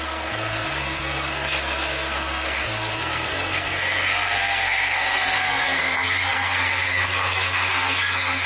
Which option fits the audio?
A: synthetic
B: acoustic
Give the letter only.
A